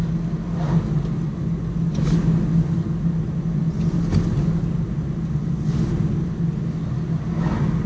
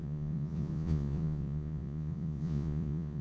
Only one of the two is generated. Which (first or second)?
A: second